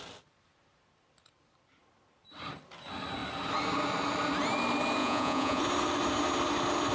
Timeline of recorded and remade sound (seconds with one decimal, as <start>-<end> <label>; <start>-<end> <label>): 0.0-5.0 recorded; 5.0-5.6 remade; 5.6-6.9 recorded